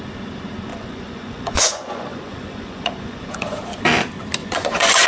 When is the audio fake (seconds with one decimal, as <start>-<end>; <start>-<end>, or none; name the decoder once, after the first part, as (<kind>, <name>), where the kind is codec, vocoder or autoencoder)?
0.7-3.8 (vocoder, Vocos); 4.4-5.1